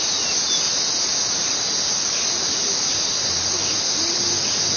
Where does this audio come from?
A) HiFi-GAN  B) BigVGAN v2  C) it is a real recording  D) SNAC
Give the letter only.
C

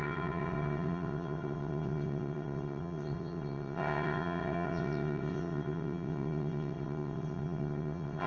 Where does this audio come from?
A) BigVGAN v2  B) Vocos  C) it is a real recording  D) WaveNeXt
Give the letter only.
D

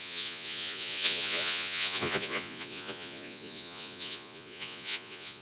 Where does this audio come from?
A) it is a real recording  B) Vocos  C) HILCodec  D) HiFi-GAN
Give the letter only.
B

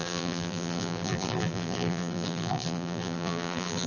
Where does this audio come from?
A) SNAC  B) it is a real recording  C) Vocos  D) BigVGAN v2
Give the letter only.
D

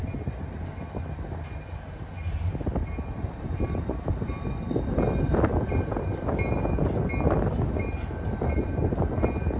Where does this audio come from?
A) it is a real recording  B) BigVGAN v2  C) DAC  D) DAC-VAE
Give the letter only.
A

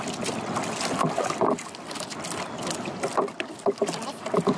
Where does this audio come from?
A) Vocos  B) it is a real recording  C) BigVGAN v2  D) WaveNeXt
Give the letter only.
B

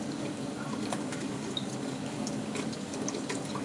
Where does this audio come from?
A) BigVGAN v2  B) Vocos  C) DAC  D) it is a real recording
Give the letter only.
C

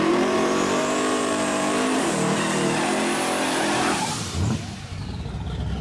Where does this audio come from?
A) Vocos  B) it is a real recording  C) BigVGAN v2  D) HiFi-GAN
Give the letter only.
C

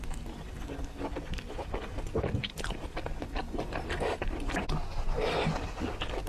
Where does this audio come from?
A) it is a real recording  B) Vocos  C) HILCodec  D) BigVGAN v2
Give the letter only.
A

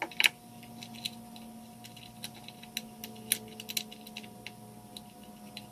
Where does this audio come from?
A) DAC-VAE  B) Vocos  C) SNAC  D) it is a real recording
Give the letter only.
D